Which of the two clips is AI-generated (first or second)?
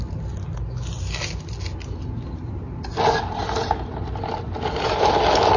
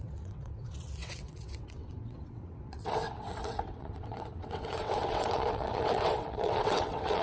second